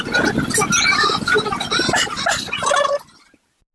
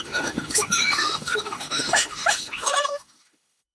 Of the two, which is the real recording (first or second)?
first